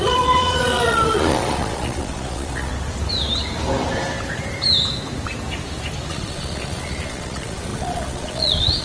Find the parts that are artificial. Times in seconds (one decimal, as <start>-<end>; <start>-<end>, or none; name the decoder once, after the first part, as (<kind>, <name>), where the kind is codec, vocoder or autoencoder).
0.0-2.7 (vocoder, Vocos); 6.1-8.8